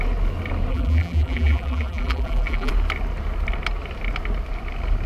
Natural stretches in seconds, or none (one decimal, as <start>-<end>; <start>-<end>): 0.0-0.7; 2.7-5.1